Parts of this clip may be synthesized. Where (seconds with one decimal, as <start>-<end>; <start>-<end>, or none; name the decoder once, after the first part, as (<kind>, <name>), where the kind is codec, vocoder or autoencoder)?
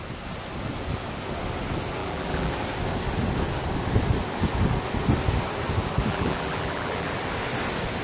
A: 2.0-2.5 (vocoder, BigVGAN v2); 6.1-7.1